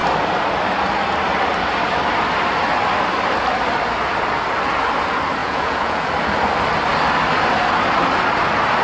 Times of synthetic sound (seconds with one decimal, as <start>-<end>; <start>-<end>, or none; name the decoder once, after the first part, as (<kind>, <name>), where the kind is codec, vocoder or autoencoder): 5.4-6.1 (vocoder, Vocos)